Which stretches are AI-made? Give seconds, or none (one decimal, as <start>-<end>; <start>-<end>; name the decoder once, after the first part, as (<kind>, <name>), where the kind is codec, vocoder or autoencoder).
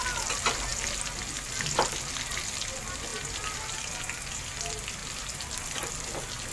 none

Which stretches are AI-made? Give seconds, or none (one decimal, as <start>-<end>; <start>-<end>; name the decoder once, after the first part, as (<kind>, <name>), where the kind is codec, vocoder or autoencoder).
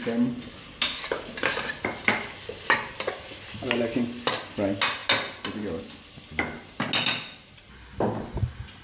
none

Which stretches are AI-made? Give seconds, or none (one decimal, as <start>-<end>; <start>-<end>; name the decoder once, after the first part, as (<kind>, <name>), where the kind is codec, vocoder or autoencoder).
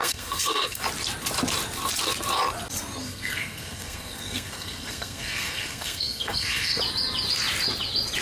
0.0-0.8 (codec, SNAC); 3.0-6.8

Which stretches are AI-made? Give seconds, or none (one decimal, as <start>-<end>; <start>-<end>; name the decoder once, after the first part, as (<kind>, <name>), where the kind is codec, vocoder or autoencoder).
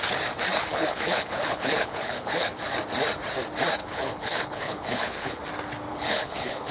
0.7-2.6 (codec, HILCodec); 3.8-5.4; 5.9-6.7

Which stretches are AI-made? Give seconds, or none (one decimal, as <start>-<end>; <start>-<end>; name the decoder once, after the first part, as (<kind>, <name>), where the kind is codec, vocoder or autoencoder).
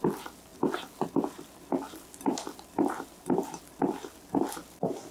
0.5-3.6 (vocoder, BigVGAN v2)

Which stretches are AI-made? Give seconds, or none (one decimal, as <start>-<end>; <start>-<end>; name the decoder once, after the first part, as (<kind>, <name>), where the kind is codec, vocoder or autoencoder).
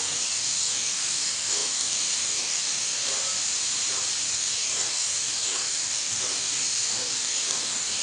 0.0-3.1 (codec, DAC); 4.3-8.0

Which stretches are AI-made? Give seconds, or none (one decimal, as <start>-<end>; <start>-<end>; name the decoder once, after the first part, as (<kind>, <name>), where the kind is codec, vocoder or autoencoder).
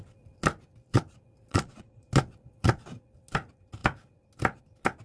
1.5-2.1 (vocoder, Vocos)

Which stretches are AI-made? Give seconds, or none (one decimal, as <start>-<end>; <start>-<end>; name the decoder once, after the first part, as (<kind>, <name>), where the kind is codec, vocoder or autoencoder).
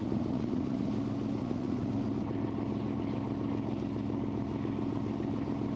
0.0-0.9 (vocoder, Vocos); 1.4-1.9